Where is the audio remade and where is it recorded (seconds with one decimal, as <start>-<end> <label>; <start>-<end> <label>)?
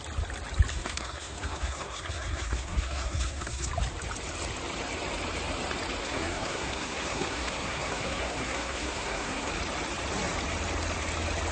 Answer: 0.0-0.7 recorded; 0.7-3.7 remade; 3.7-6.0 recorded; 6.0-9.5 remade; 9.5-11.5 recorded